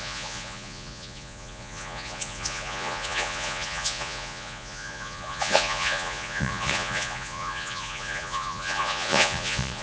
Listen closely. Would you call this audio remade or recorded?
remade